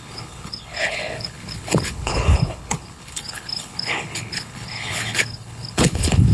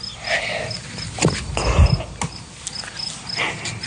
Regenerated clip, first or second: first